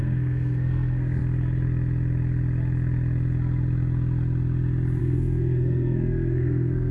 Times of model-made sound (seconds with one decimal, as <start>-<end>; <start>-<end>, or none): 0.0-1.2; 5.0-6.9